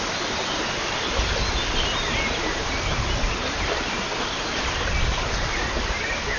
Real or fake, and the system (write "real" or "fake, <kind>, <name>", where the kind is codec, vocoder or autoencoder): real